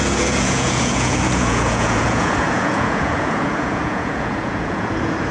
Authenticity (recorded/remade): remade